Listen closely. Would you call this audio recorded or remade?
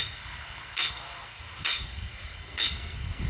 remade